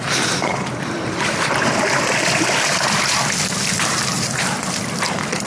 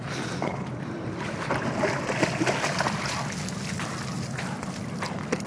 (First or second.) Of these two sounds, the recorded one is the second